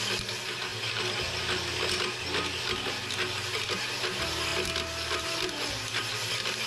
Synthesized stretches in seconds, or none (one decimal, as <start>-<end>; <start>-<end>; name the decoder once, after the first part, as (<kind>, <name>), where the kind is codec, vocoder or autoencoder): none